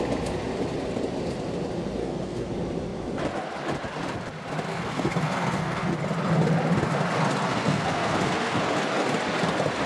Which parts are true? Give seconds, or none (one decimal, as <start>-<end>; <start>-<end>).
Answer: 0.0-2.0; 2.5-4.7; 5.9-7.5; 8.6-9.9